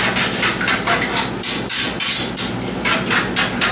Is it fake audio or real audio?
real